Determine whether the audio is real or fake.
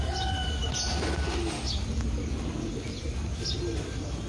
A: real